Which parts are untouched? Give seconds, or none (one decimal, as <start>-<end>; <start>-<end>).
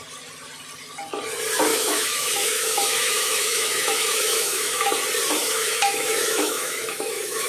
0.0-1.7; 4.9-5.4